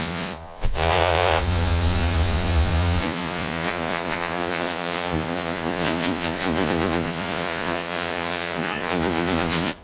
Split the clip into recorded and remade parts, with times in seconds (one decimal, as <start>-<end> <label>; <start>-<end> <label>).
0.0-9.8 remade